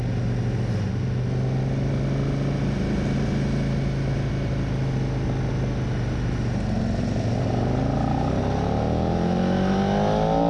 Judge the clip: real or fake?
real